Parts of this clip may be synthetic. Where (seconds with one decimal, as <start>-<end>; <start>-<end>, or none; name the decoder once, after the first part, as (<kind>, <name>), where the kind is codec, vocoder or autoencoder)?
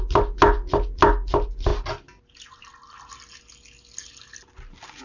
none